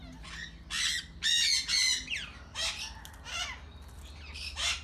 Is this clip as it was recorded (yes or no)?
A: yes